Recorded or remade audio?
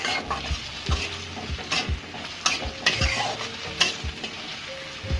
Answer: recorded